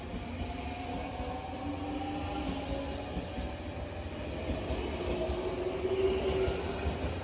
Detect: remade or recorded recorded